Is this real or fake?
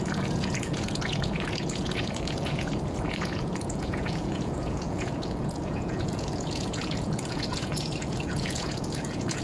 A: fake